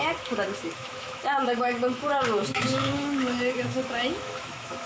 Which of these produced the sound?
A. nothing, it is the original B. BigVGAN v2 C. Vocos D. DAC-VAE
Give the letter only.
D